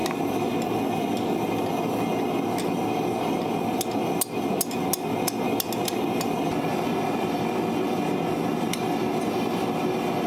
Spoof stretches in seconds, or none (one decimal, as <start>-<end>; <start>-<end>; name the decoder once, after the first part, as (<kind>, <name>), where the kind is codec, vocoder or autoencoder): none